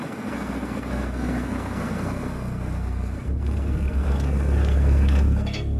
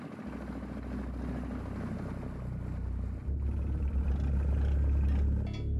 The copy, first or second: first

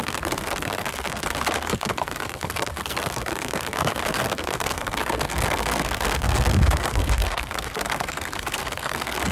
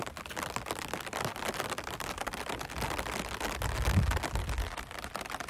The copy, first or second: first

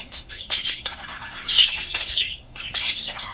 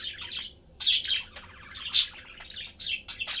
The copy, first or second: first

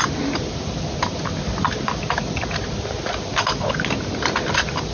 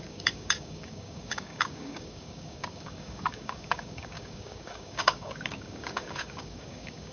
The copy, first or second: second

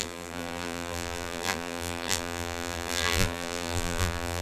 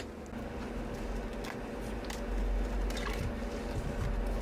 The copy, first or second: first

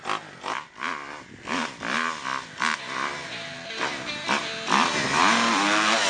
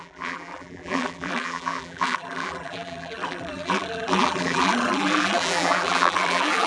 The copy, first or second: second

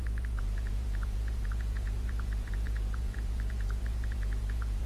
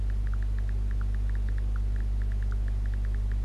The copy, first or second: first